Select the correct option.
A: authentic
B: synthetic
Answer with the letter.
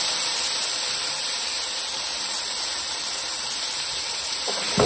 B